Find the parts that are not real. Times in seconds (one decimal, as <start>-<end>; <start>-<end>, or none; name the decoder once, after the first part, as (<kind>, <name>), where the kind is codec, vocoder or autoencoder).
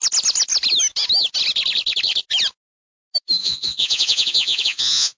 3.4-5.2 (vocoder, Vocos)